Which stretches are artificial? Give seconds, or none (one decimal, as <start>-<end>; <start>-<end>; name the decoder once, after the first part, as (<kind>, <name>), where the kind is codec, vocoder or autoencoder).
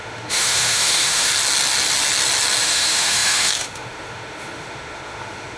0.0-1.3 (autoencoder, DAC-VAE); 2.6-5.6